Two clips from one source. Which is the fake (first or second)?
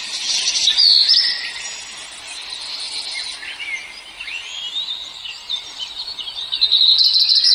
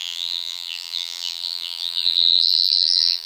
second